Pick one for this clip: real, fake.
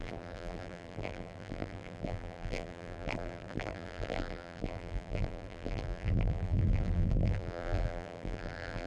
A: fake